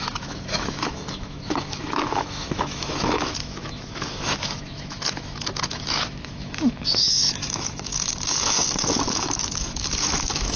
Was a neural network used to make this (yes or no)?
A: yes